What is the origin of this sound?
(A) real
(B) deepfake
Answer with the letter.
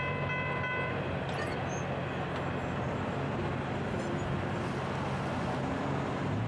A